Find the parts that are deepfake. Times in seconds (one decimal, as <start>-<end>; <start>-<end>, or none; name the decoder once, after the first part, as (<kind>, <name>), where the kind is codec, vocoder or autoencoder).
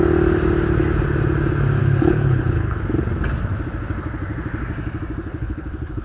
1.8-2.8 (codec, HILCodec); 5.2-6.0